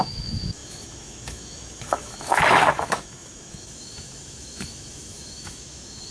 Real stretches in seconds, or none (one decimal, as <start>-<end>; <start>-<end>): none